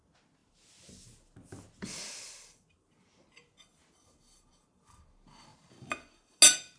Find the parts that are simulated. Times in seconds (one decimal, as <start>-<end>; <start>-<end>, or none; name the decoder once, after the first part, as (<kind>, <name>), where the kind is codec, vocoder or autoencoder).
none

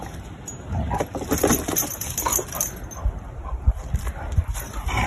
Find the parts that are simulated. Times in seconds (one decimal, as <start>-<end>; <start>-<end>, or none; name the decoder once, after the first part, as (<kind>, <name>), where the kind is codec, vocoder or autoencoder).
1.8-5.1 (vocoder, BigVGAN v2)

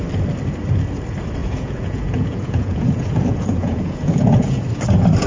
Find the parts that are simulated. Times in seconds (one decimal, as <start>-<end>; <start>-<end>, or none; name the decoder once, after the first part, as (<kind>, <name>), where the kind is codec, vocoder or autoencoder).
1.4-4.6 (vocoder, Vocos)

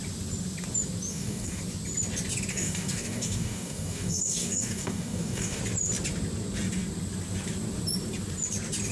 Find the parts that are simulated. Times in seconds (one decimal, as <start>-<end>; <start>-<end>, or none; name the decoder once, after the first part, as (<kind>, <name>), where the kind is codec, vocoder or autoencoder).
1.1-1.6 (codec, DAC); 2.5-5.6